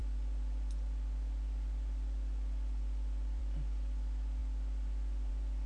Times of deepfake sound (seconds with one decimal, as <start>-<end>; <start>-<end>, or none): none